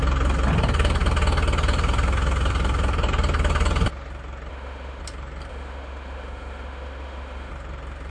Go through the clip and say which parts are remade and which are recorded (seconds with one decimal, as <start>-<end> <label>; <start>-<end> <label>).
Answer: 0.0-4.5 recorded; 4.5-5.0 remade; 5.0-5.5 recorded; 5.5-7.5 remade; 7.5-8.1 recorded